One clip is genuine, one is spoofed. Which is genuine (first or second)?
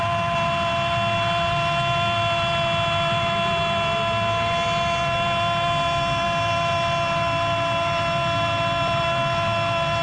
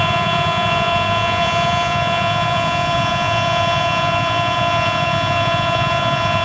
first